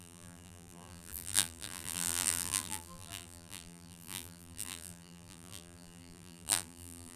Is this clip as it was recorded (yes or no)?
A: no